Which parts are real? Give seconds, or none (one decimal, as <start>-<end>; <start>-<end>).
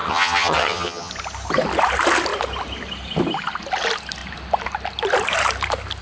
1.1-6.0